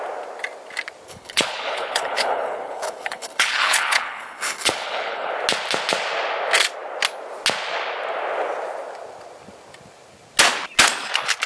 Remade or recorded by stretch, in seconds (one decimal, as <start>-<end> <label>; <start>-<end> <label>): 0.0-1.1 recorded; 1.1-5.3 remade; 5.3-11.5 recorded